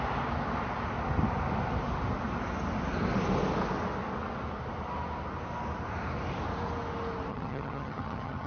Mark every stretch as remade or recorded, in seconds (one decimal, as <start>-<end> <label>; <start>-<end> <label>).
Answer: 0.0-7.3 recorded; 7.3-8.5 remade